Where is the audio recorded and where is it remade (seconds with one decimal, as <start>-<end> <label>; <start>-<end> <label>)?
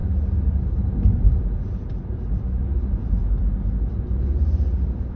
0.0-5.2 recorded